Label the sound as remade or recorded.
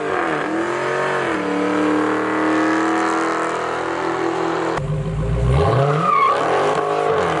recorded